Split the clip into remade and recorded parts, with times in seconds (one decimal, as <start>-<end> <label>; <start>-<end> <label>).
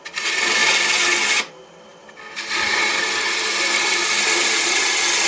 0.0-5.3 recorded